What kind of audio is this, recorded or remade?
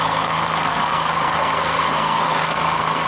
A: remade